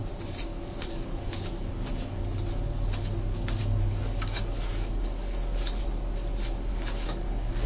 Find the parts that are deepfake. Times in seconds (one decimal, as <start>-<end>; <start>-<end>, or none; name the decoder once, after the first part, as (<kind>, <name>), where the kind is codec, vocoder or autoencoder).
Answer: 0.5-2.2 (codec, DAC); 3.3-5.8; 6.7-7.7